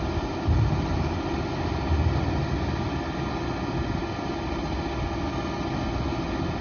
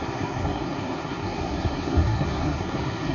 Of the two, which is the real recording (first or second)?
first